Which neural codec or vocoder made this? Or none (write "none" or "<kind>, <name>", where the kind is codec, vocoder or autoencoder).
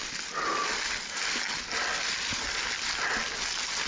none